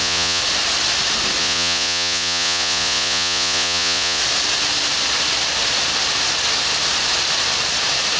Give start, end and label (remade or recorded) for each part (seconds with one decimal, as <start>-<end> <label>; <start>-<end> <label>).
0.0-0.4 remade; 0.4-1.4 recorded; 1.4-4.2 remade; 4.2-8.2 recorded